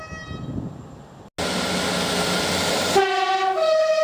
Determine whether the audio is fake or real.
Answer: real